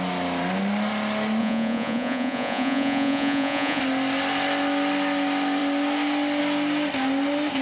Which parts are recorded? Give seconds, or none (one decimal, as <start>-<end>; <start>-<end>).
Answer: 0.0-1.4; 3.8-7.6